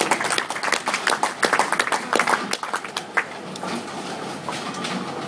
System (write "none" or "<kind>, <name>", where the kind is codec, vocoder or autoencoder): none